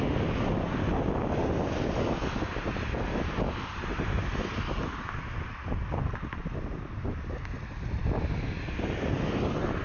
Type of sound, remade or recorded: recorded